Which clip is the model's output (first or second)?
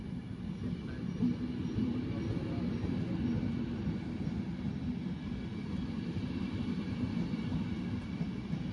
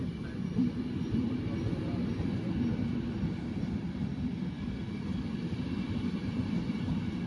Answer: second